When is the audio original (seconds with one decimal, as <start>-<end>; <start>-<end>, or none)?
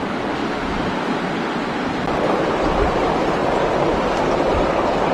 0.0-0.4; 0.9-3.4; 4.1-5.1